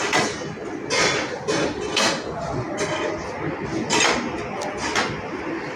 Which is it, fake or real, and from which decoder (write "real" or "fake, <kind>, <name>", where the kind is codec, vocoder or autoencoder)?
real